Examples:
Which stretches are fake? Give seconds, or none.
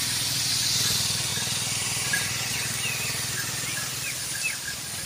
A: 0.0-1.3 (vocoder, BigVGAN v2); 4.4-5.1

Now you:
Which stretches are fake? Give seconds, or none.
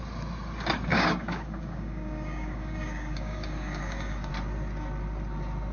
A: 0.9-4.3 (codec, DAC)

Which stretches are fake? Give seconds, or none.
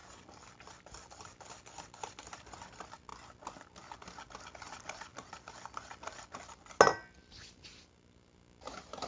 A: 0.0-2.1 (vocoder, BigVGAN v2); 5.1-6.7